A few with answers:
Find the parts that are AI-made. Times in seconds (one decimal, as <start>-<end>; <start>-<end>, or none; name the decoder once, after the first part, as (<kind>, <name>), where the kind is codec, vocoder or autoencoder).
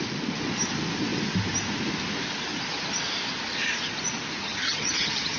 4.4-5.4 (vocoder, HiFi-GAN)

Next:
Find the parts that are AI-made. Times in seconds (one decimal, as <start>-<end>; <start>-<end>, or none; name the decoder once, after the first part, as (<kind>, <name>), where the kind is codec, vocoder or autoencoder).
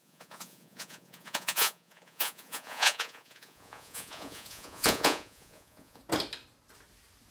0.0-6.0 (vocoder, Vocos)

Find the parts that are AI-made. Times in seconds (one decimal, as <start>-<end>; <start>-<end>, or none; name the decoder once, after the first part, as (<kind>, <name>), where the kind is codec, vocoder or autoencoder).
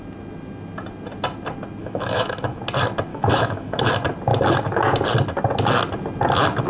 1.8-2.6 (autoencoder, DAC-VAE); 3.1-3.9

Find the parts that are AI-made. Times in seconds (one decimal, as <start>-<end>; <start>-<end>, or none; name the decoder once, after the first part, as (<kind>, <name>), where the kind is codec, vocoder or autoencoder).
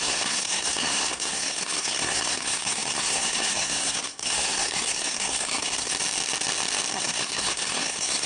0.0-5.9 (codec, SNAC); 6.9-8.3